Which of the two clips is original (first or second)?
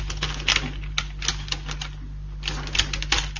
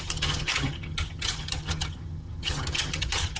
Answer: first